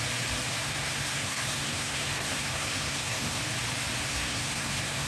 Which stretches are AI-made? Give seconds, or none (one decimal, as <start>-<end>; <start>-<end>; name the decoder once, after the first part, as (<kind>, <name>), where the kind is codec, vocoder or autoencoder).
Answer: 0.6-3.4 (codec, SNAC); 4.0-5.1

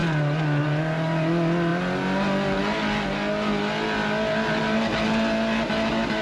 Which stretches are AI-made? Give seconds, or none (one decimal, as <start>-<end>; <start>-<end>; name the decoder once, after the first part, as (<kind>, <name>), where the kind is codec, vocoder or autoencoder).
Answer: none

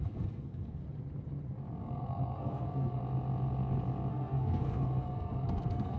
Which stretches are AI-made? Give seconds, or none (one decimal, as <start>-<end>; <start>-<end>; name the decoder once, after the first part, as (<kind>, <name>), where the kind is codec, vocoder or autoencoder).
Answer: 0.0-0.8 (codec, SNAC); 1.8-3.0; 4.1-6.0